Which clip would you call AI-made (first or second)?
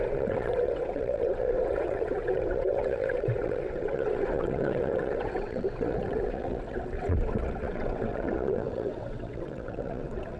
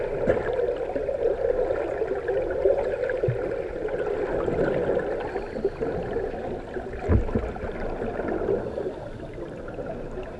first